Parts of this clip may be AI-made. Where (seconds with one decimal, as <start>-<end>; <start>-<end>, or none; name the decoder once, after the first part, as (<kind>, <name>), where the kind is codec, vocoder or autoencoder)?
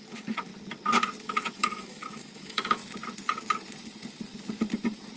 0.0-0.5 (autoencoder, DAC-VAE); 1.2-2.8